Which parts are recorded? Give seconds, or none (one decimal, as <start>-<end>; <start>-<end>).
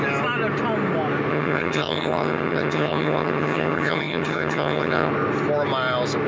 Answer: 0.0-1.3; 5.1-6.3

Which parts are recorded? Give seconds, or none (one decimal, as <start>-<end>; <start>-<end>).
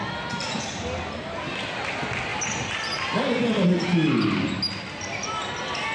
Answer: 0.0-5.9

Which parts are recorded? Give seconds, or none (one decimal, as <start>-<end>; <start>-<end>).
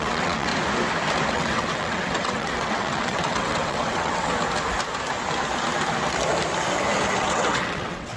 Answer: 0.5-1.3; 4.3-7.2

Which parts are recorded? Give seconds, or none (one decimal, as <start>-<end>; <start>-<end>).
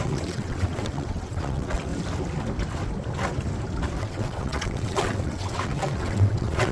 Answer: 1.9-4.0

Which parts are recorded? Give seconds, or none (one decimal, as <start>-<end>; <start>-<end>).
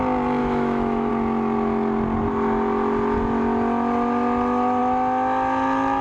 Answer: 0.0-0.4; 1.1-6.0